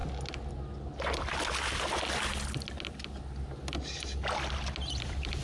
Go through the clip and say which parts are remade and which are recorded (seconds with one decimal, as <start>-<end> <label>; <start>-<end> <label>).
0.0-5.4 recorded